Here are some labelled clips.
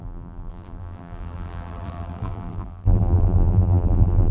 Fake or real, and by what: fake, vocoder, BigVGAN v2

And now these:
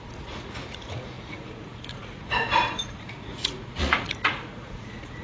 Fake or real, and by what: fake, vocoder, Vocos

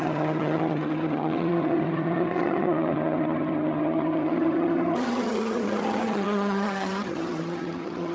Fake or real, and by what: fake, vocoder, HiFi-GAN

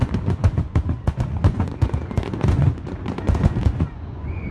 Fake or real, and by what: fake, vocoder, Vocos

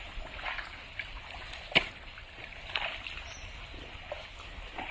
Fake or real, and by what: real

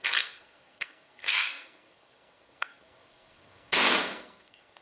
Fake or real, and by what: fake, codec, SNAC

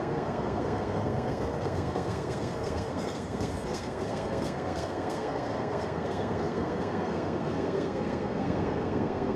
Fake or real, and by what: fake, codec, SNAC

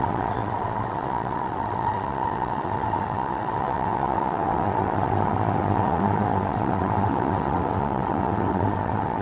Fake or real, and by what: fake, vocoder, WaveNeXt